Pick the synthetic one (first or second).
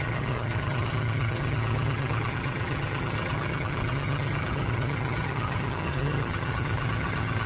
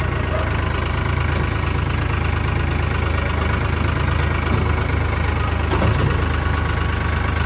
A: first